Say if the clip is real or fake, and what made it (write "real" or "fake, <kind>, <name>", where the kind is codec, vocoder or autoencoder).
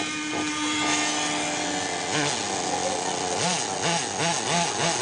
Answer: real